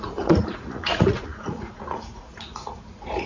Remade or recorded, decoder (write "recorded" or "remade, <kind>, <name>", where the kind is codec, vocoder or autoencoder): remade, vocoder, Vocos